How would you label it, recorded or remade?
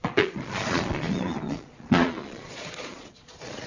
remade